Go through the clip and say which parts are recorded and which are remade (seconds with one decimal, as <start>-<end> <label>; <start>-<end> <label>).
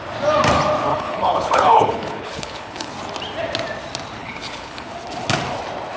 0.0-0.9 recorded; 0.9-2.9 remade; 2.9-4.2 recorded; 4.2-4.9 remade; 4.9-6.0 recorded